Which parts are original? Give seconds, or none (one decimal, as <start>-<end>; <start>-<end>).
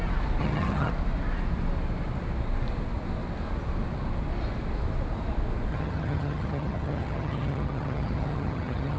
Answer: 0.0-0.4; 0.9-5.7